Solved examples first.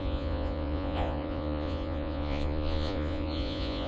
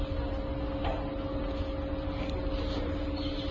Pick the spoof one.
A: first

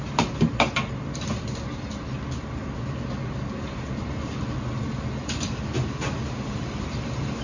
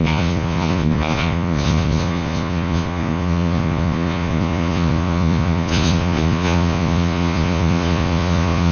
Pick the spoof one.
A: second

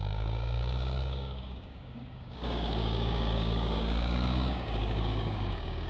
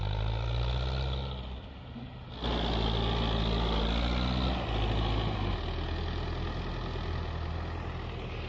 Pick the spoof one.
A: first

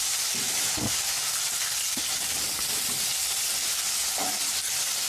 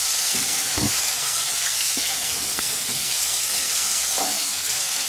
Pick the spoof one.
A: second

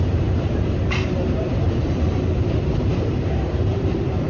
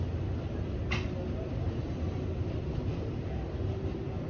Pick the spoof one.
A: first